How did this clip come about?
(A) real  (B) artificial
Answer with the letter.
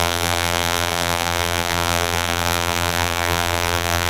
B